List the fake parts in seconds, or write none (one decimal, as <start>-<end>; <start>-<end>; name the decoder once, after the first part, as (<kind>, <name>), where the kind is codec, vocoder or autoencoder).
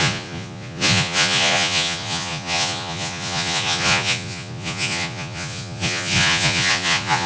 0.0-7.3 (vocoder, Vocos)